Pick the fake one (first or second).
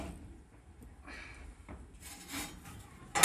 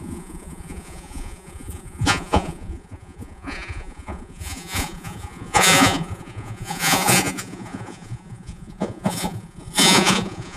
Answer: second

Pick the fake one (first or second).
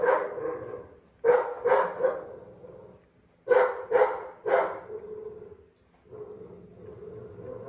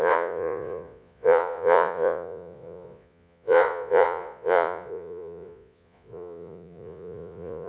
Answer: second